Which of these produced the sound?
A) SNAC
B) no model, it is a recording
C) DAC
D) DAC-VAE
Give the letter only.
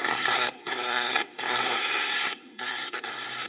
A